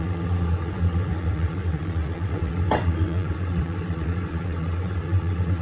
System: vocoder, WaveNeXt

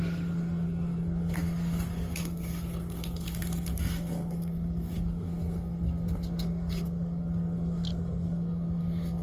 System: codec, SNAC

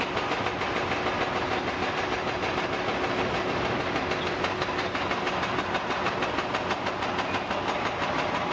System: none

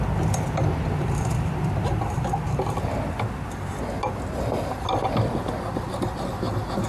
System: none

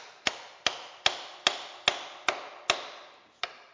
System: none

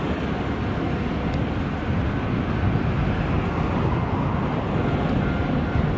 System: none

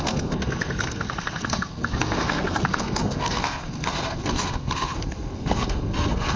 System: codec, SNAC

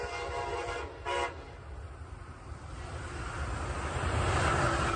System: none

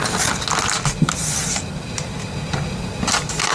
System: none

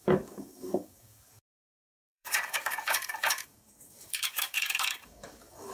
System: codec, DAC